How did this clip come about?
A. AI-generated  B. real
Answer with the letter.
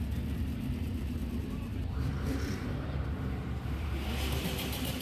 A